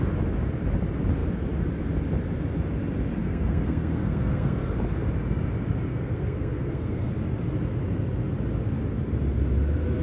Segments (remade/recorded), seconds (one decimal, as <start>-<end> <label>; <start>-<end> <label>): 0.0-3.2 recorded; 3.2-4.6 remade; 4.6-5.9 recorded; 5.9-7.1 remade; 7.1-10.0 recorded